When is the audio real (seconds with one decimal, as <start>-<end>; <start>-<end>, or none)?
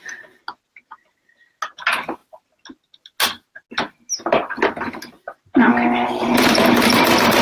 0.0-7.4